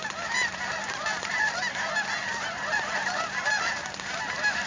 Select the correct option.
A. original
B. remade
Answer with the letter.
B